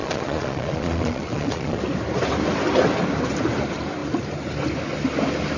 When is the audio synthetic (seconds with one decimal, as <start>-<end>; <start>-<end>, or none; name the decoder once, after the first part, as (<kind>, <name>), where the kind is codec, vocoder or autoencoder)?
0.0-1.8 (vocoder, Vocos)